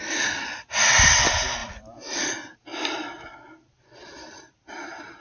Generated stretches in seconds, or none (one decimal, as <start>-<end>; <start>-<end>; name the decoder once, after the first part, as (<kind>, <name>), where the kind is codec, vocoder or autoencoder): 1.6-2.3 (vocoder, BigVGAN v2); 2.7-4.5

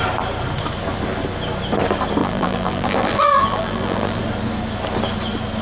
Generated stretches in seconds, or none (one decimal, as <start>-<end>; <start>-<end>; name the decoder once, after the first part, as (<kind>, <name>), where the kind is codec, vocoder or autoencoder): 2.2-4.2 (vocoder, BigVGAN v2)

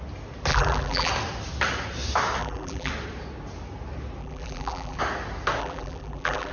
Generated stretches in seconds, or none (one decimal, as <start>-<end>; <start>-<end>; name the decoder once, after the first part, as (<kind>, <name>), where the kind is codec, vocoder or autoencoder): 0.5-1.1 (vocoder, BigVGAN v2); 2.4-2.9; 4.2-5.0; 5.6-6.5